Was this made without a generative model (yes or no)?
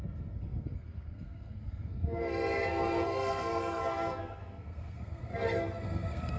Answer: no